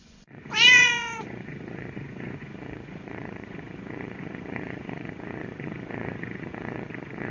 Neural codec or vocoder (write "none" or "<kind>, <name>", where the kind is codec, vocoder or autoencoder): vocoder, Vocos